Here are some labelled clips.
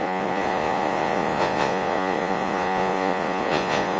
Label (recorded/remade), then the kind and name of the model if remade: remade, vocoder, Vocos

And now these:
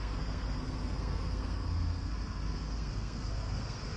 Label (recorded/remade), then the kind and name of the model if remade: remade, codec, SNAC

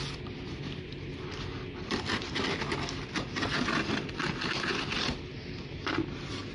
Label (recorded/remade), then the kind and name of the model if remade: recorded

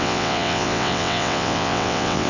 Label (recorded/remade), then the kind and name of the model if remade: remade, vocoder, WaveNeXt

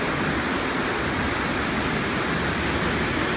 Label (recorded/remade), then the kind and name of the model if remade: recorded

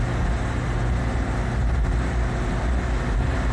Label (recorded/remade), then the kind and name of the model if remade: recorded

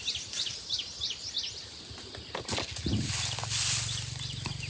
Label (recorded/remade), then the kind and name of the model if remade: recorded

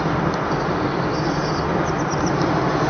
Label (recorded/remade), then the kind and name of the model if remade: recorded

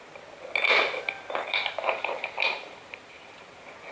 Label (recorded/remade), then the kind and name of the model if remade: recorded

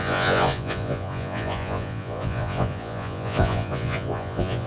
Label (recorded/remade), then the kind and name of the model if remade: remade, vocoder, Vocos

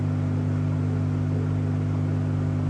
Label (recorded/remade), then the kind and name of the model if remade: recorded